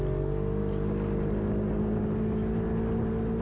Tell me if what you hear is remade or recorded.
recorded